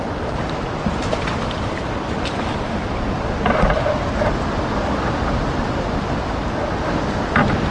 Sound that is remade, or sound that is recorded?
recorded